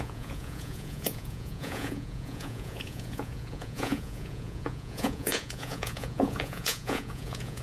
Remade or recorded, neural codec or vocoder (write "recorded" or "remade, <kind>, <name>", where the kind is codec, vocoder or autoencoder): remade, vocoder, Vocos